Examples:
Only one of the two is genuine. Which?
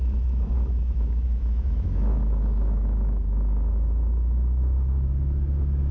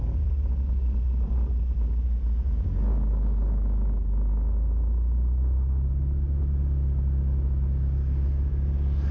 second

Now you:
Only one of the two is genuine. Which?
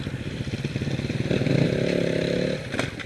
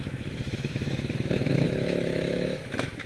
first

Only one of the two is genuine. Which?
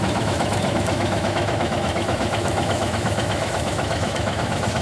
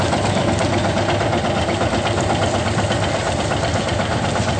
second